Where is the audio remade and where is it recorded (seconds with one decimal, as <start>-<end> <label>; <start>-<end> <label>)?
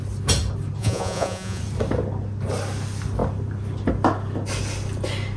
0.0-0.8 recorded; 0.8-1.6 remade; 1.6-5.4 recorded